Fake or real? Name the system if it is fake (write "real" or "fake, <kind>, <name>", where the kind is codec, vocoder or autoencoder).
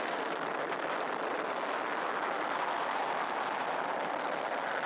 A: real